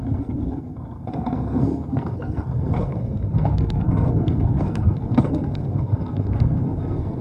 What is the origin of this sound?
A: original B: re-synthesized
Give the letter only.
B